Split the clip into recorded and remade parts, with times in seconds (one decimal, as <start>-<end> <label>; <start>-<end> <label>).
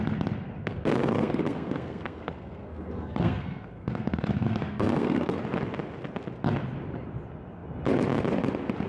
0.0-0.6 recorded; 0.6-5.4 remade; 5.4-8.9 recorded